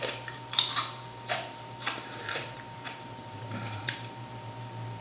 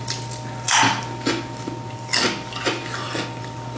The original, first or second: second